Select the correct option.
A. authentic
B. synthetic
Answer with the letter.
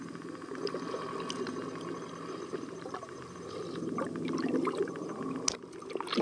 A